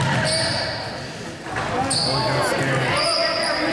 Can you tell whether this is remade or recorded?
recorded